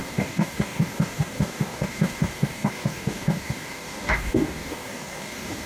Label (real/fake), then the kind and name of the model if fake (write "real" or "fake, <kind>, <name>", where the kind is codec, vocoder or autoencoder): fake, codec, DAC